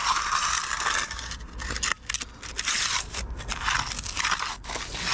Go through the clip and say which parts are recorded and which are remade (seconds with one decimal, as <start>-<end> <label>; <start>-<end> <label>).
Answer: 0.0-5.1 recorded